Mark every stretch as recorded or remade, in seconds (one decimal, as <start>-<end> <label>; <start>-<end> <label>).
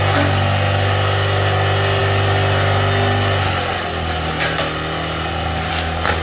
0.0-6.2 recorded